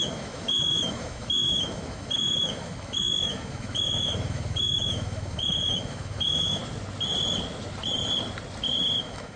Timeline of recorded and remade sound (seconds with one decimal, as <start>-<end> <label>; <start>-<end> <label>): 0.0-6.6 remade; 6.6-9.0 recorded; 9.0-9.4 remade